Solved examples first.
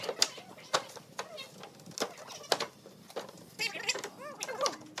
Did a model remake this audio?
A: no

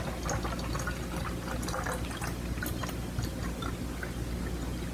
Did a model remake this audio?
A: no